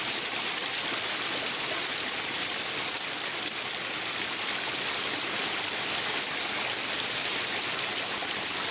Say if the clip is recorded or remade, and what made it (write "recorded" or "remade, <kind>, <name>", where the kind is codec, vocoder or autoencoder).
recorded